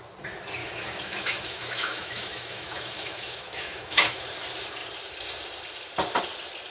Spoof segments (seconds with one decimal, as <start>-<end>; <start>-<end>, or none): 0.6-4.2